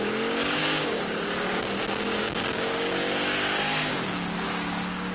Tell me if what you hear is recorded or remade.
remade